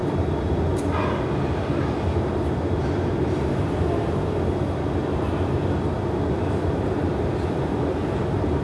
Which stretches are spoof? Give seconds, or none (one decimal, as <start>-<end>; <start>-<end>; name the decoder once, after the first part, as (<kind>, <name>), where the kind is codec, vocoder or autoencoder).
3.2-5.0 (vocoder, BigVGAN v2); 6.5-8.6